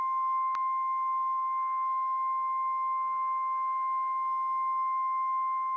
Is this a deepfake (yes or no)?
yes